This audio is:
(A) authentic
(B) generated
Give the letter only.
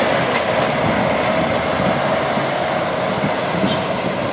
A